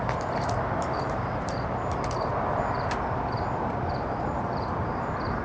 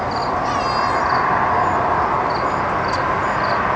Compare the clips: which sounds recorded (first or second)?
second